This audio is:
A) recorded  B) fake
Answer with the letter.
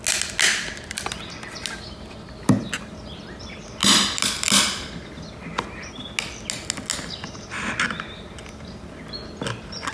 A